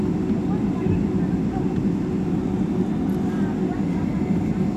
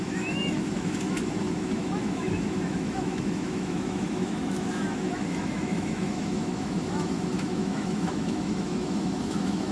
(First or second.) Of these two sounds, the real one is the first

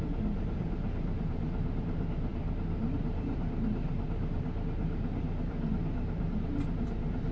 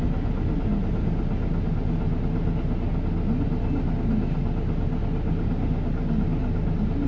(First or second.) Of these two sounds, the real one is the second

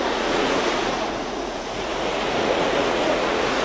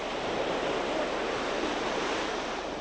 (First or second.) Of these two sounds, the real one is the second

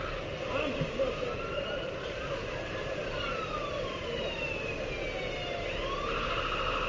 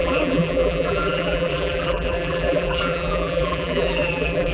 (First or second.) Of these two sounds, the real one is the first